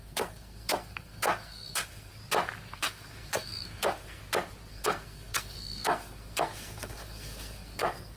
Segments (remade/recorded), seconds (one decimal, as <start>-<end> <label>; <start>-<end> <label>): 0.0-2.1 remade; 2.1-2.7 recorded; 2.7-4.2 remade; 4.2-4.7 recorded; 4.7-8.2 remade